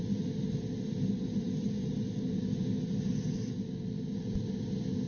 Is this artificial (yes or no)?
no